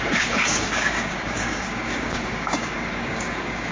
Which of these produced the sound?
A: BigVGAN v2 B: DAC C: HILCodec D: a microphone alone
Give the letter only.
B